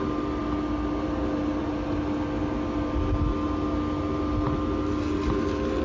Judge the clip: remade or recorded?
recorded